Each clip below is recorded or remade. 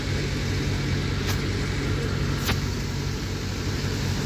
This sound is recorded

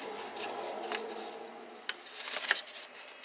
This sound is recorded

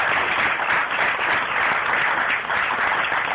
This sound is recorded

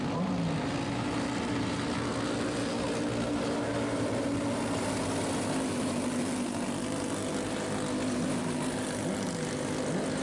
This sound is recorded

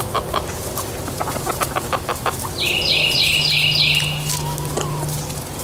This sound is recorded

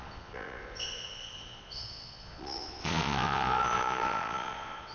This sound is remade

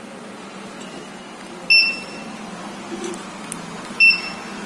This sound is recorded